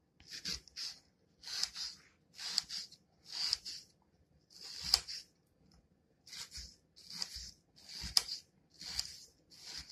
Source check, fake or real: real